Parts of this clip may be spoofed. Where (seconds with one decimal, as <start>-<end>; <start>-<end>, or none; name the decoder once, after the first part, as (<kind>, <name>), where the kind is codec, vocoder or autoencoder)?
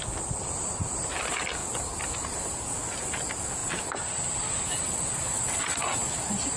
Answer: none